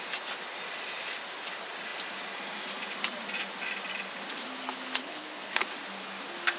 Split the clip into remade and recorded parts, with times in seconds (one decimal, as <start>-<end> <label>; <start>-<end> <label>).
0.0-5.0 recorded; 5.0-5.6 remade; 5.6-6.6 recorded